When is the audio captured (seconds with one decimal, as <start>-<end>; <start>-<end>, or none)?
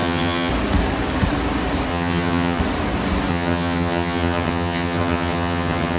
0.5-1.9; 2.6-3.3